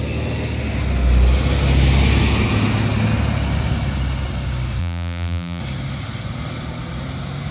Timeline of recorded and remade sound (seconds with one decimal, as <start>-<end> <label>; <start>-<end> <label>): 0.0-4.8 recorded; 4.8-5.6 remade; 5.6-7.5 recorded